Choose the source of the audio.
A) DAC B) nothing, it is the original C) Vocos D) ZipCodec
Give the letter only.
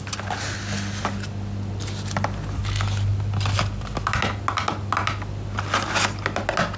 B